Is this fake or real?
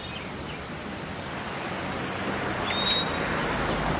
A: real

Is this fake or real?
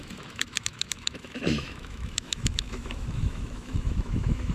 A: fake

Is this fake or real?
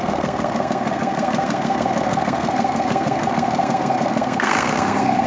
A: fake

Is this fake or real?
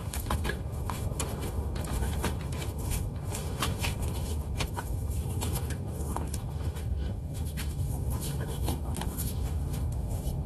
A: fake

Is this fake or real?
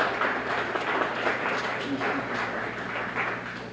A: real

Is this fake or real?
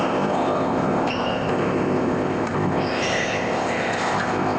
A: fake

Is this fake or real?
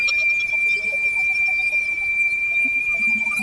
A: fake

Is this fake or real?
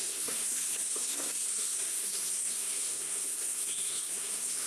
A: fake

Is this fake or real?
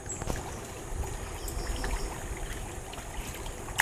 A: real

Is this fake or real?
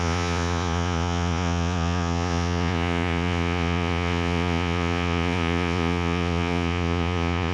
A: fake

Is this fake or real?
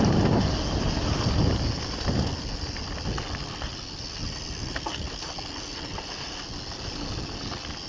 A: real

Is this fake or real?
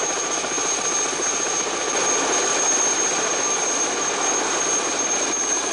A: real